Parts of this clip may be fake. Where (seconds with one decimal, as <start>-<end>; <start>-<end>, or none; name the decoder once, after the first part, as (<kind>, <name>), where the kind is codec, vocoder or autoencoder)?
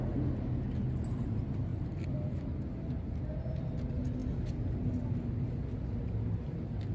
none